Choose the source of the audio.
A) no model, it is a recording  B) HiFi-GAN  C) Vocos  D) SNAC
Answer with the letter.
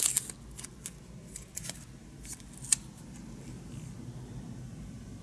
A